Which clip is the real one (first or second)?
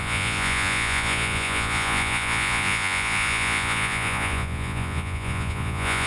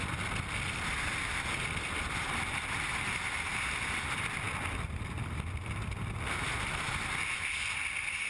second